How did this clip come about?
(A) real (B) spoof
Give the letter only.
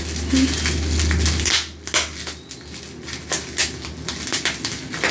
A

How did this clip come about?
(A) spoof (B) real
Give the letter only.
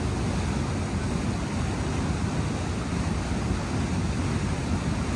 B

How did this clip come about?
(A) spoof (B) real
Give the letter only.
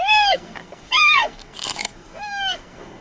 A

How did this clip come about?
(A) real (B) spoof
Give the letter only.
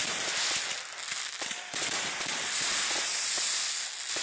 A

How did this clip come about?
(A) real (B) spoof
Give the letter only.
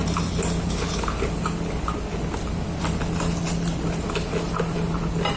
A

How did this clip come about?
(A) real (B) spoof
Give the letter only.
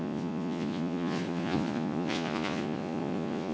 B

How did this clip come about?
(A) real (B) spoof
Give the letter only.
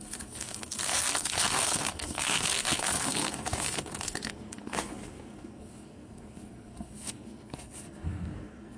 B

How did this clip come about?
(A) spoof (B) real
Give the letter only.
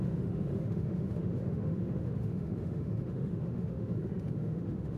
A